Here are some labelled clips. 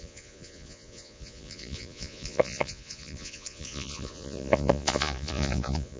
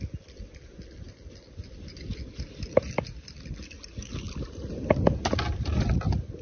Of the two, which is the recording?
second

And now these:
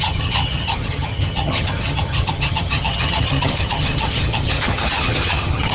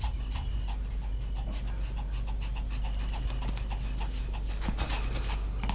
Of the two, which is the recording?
second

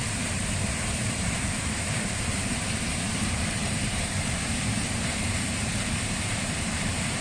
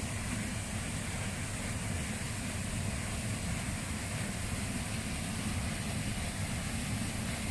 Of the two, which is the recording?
second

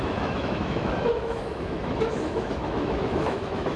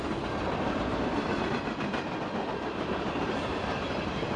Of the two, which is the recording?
second